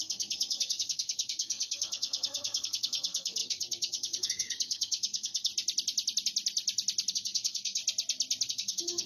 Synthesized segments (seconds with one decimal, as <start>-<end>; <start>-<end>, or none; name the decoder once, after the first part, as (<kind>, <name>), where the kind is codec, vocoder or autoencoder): 0.0-5.5 (codec, SNAC); 7.1-7.8; 8.5-9.1